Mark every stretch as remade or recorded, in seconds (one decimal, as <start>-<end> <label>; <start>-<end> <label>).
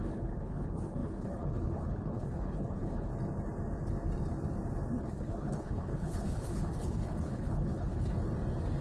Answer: 0.0-3.1 remade; 3.1-5.0 recorded; 5.0-8.1 remade; 8.1-8.8 recorded